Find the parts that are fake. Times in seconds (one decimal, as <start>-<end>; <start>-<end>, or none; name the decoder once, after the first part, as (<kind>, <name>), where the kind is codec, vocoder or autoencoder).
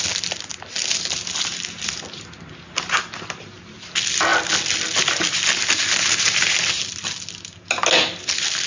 none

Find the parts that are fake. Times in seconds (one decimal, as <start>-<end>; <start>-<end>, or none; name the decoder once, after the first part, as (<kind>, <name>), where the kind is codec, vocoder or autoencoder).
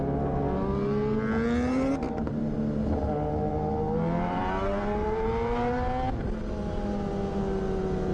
none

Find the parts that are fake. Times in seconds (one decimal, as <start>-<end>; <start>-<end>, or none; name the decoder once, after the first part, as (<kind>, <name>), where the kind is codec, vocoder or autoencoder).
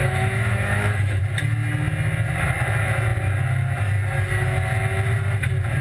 0.0-1.2 (autoencoder, DAC-VAE)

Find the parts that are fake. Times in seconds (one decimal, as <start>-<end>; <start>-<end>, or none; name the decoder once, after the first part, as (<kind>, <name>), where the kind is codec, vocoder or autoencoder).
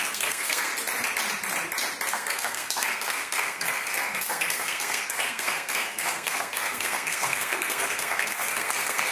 0.0-0.7 (codec, SNAC); 2.1-9.1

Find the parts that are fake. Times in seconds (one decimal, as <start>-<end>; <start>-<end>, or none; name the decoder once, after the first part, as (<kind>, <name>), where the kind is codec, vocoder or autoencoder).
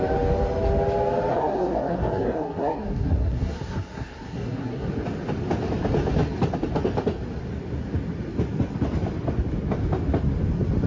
1.3-4.9 (codec, SNAC)